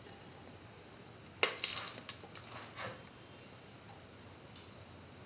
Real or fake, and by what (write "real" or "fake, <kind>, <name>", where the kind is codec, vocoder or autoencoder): real